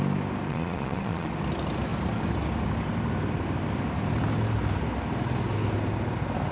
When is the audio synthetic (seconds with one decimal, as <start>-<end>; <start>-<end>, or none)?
0.5-1.3